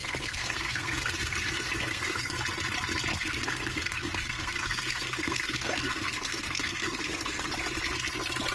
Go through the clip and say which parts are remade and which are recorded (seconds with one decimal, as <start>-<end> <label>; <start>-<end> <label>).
0.0-2.4 remade; 2.4-3.1 recorded; 3.1-7.5 remade; 7.5-8.5 recorded